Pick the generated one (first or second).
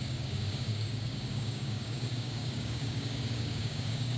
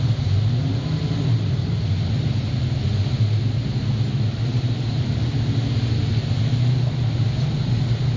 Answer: first